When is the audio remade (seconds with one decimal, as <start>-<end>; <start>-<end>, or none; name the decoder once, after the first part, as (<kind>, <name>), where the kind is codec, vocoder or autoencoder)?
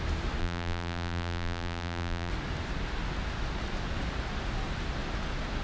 0.4-2.3 (vocoder, BigVGAN v2)